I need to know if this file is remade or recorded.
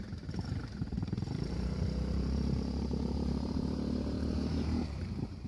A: remade